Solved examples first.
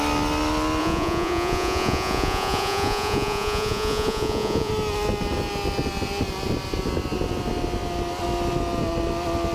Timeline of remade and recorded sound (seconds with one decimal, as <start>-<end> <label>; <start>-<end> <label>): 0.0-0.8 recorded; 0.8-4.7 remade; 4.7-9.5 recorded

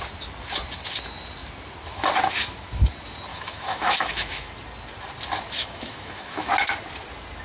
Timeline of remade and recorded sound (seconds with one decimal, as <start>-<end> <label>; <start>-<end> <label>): 0.0-3.3 recorded; 3.3-4.5 remade; 4.5-5.6 recorded; 5.6-6.5 remade; 6.5-7.4 recorded

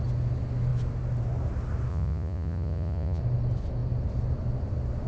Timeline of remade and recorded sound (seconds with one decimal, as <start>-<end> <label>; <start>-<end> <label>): 0.0-1.9 recorded; 1.9-3.2 remade; 3.2-5.1 recorded